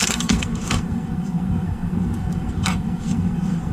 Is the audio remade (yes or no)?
yes